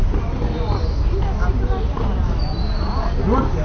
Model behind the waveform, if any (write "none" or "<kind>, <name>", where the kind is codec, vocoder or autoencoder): none